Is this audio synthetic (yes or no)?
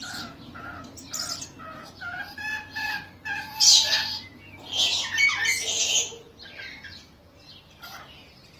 no